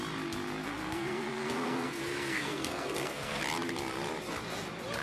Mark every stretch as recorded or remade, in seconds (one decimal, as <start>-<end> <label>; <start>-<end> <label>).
0.0-0.6 recorded; 0.6-3.4 remade; 3.4-5.0 recorded